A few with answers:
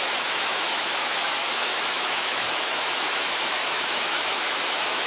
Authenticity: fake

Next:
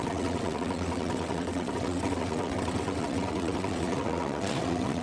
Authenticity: fake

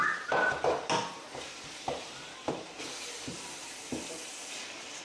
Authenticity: real